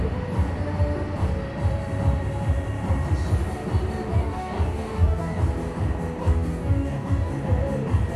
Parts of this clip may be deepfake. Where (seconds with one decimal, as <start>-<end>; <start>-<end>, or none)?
4.2-5.4; 6.2-7.3